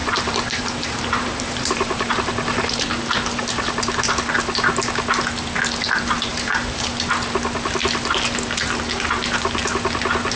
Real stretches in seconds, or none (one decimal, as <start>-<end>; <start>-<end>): 2.1-6.3; 6.9-10.4